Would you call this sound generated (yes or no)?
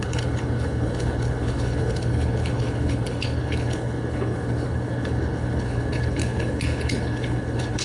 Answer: yes